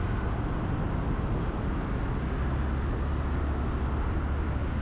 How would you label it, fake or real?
real